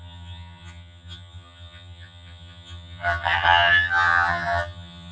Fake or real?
fake